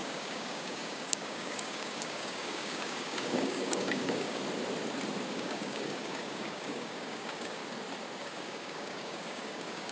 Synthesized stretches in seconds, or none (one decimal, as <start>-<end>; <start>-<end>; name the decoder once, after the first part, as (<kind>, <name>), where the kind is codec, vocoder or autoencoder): 0.0-4.4 (codec, DAC); 5.3-7.6; 8.2-9.9